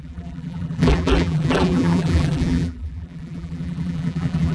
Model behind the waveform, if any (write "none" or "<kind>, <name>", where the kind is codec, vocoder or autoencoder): vocoder, BigVGAN v2